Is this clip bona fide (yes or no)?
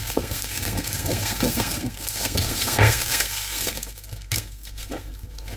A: no